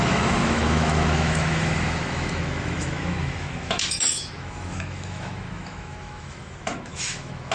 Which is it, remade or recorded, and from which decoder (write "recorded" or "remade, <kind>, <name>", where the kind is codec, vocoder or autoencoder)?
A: remade, autoencoder, DAC-VAE